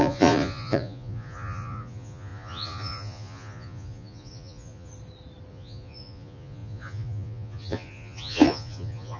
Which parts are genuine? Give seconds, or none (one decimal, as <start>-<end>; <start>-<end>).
4.9-5.5